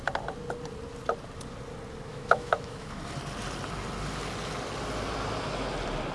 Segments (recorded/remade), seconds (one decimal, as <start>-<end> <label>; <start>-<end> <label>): 0.0-2.1 recorded; 2.1-3.0 remade; 3.0-6.1 recorded